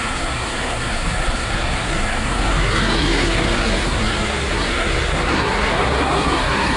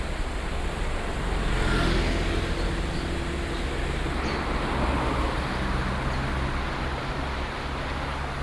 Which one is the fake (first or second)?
first